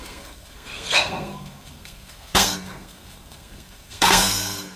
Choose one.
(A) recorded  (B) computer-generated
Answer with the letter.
B